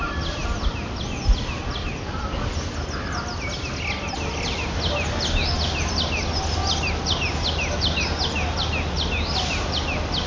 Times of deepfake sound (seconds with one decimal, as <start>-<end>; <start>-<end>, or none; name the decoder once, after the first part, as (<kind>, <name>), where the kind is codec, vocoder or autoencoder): none